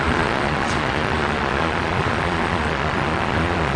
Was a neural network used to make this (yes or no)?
yes